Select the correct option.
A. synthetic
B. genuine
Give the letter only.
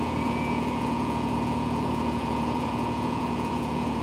A